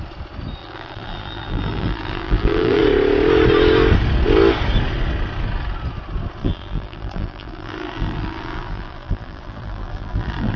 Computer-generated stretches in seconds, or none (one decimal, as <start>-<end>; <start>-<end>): 0.6-2.8; 6.4-10.6